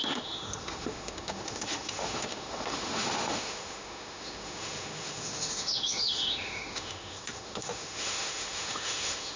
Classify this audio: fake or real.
fake